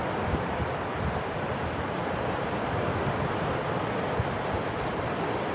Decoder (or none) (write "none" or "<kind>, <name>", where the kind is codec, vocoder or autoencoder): none